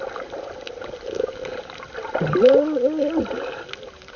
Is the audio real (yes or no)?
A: yes